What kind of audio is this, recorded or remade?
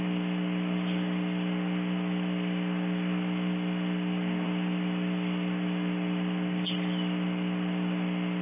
recorded